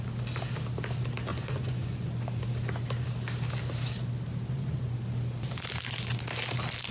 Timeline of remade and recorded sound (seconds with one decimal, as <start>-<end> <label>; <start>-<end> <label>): 0.0-1.3 recorded; 1.3-2.4 remade; 2.4-6.9 recorded